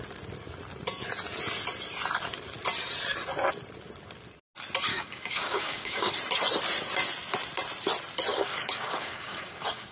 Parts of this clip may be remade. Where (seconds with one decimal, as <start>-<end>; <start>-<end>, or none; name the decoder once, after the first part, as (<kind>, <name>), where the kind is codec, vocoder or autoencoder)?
4.9-6.1 (codec, DAC); 8.3-9.9

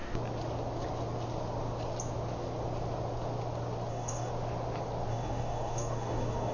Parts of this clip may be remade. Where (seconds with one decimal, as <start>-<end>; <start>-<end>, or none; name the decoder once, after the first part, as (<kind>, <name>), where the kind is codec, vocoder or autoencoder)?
3.9-4.3 (codec, DAC); 5.1-6.5

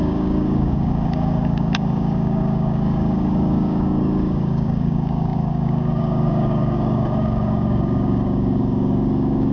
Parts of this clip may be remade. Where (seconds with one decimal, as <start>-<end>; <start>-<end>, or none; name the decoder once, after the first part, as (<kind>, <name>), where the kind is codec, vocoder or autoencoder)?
0.0-9.5 (codec, DAC)

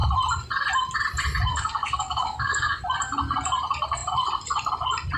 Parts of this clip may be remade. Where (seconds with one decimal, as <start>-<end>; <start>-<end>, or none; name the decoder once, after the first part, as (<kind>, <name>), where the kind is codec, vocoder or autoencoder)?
1.5-2.8 (codec, DAC)

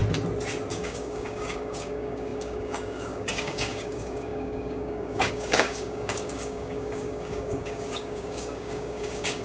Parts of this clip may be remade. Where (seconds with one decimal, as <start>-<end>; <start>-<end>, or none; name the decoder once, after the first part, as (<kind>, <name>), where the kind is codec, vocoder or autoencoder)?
0.7-9.4 (codec, DAC)

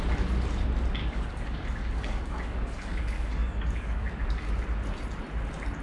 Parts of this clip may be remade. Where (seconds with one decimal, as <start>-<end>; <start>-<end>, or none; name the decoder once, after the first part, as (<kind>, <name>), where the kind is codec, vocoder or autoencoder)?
1.0-4.5 (codec, DAC)

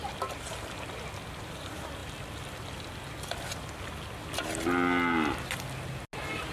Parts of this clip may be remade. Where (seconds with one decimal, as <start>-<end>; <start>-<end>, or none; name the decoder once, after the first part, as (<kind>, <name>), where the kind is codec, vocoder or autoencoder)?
none

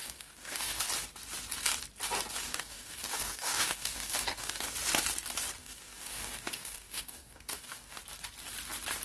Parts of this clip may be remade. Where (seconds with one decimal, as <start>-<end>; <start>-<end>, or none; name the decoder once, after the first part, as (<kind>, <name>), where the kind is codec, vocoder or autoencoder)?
0.0-0.9 (codec, DAC); 2.4-4.6; 5.6-8.0